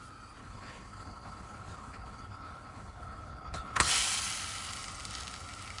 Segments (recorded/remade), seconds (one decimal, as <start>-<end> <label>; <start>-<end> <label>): 0.0-0.4 recorded; 0.4-3.9 remade; 3.9-5.8 recorded